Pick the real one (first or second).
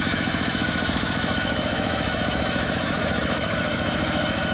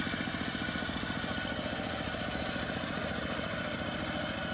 second